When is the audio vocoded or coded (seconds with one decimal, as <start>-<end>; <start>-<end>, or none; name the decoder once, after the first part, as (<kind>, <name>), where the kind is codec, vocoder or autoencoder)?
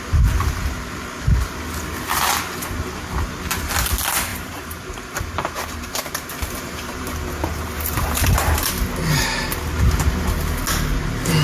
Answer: 4.3-8.7 (vocoder, BigVGAN v2)